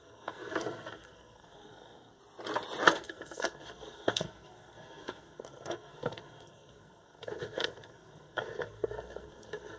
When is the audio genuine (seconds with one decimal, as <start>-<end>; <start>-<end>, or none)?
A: 2.2-2.9